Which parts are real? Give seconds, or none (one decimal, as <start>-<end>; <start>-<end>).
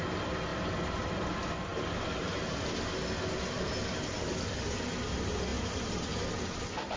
0.0-7.0